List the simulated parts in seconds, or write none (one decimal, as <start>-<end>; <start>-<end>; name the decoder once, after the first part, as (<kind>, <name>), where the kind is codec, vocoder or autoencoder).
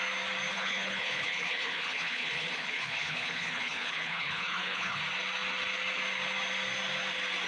0.5-5.0 (codec, HILCodec)